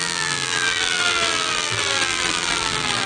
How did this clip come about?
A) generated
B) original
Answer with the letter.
A